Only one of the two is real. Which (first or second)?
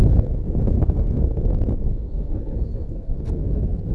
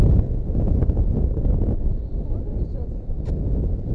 second